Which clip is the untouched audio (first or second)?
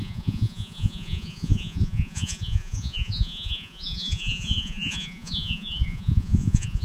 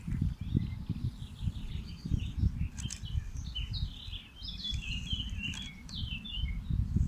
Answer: second